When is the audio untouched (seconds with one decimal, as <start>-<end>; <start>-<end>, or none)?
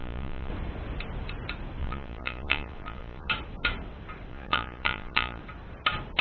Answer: 0.5-1.8; 3.3-4.3; 5.4-6.2